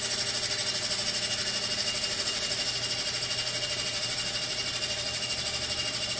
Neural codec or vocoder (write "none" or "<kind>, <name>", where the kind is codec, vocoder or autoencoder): none